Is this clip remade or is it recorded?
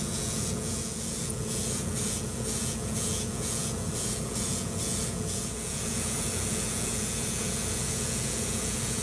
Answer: remade